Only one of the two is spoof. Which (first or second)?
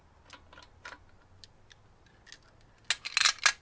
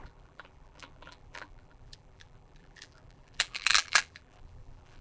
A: second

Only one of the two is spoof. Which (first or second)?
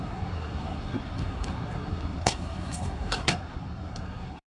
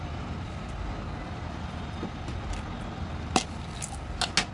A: first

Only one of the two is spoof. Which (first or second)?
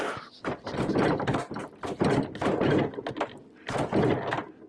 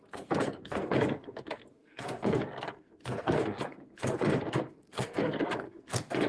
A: second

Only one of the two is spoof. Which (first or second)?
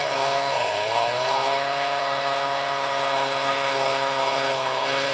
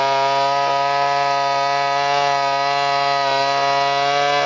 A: first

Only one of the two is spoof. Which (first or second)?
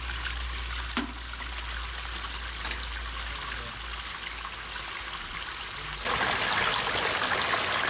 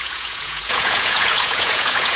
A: second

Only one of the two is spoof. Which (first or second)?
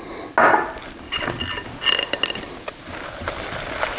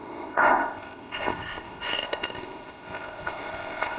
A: second